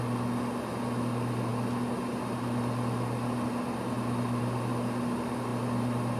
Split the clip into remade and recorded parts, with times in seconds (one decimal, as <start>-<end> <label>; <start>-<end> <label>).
0.0-6.2 recorded